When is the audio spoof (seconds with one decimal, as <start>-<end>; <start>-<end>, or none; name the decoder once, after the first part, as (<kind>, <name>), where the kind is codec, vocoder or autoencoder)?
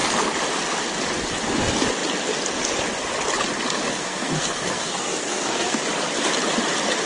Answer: 3.9-5.8 (codec, SNAC)